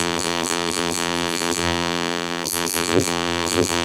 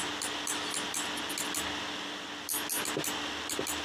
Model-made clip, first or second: first